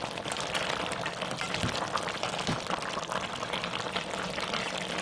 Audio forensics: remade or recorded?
recorded